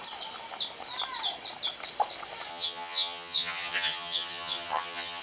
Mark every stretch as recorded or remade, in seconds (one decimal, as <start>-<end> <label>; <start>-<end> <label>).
0.0-2.5 recorded; 2.5-5.2 remade